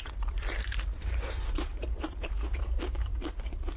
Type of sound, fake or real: fake